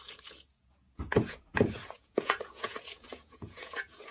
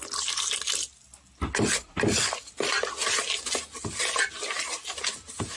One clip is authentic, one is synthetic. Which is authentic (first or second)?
second